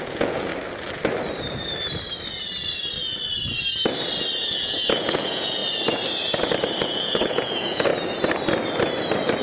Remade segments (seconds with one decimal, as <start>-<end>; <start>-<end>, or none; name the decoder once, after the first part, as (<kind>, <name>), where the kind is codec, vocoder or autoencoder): 0.0-0.5 (vocoder, Vocos); 4.6-5.6; 6.8-7.9